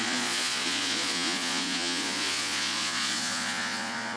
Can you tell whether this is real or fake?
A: fake